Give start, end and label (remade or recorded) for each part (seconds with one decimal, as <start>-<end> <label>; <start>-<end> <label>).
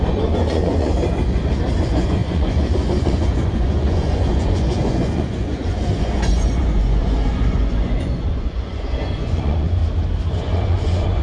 0.0-0.9 remade; 0.9-1.8 recorded; 1.8-9.8 remade; 9.8-10.3 recorded; 10.3-11.2 remade